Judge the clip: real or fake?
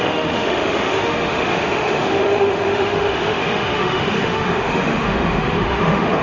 fake